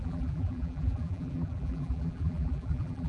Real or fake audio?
fake